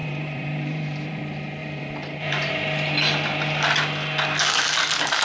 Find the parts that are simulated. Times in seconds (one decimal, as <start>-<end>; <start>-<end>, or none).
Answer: 0.0-1.2; 1.6-2.5

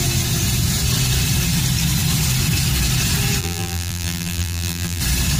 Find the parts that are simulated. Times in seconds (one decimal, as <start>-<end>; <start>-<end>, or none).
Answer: 3.4-5.0

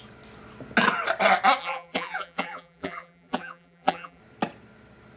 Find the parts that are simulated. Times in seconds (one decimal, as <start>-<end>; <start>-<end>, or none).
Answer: 1.6-4.2

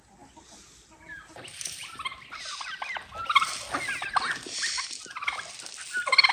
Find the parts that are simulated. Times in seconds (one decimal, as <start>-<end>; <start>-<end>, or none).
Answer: 0.9-2.2

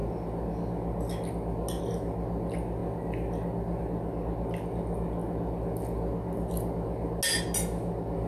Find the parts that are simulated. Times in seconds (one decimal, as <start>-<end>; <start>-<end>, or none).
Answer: none